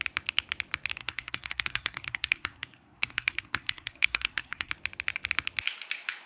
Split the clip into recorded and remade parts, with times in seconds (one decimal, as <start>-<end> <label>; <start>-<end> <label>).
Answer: 0.0-1.0 recorded; 1.0-4.7 remade; 4.7-6.3 recorded